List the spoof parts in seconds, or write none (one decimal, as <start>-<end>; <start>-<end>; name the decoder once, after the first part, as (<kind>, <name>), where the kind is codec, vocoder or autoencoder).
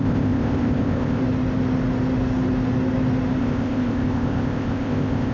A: 0.0-1.2 (codec, ZipCodec); 3.4-5.3